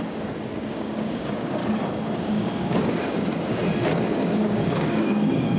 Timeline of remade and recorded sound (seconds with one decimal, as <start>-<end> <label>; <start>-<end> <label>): 0.0-1.6 remade; 1.6-2.2 recorded; 2.2-3.6 remade; 3.6-4.2 recorded; 4.2-5.6 remade